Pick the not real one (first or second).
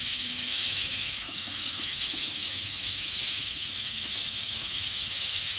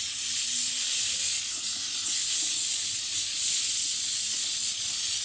first